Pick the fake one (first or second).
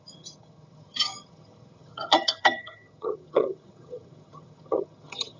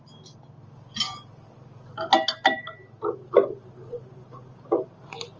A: first